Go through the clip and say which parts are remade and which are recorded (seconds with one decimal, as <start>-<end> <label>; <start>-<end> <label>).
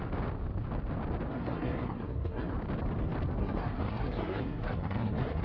0.0-1.3 recorded; 1.3-2.5 remade; 2.5-3.4 recorded; 3.4-5.4 remade